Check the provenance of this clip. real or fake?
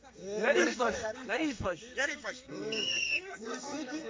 fake